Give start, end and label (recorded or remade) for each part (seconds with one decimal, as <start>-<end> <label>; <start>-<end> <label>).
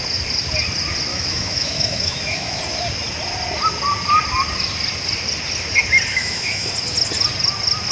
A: 0.0-1.1 recorded; 1.1-2.6 remade; 2.6-6.1 recorded; 6.1-6.7 remade; 6.7-7.9 recorded